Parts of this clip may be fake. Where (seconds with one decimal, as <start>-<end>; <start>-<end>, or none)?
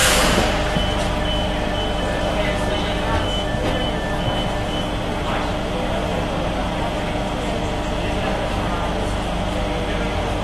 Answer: none